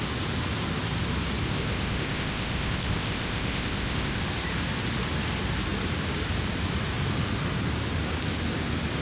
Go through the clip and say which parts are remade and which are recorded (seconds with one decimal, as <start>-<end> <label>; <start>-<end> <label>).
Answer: 0.0-1.5 recorded; 1.5-4.2 remade; 4.2-9.0 recorded